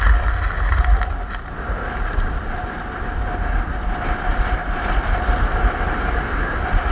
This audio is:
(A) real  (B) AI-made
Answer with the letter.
A